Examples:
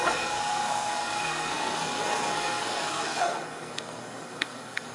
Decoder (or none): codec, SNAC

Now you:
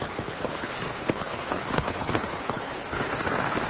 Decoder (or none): codec, HILCodec